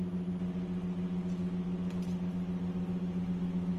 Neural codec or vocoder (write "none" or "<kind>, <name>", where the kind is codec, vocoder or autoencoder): none